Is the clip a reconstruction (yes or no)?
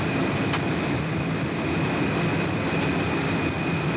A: no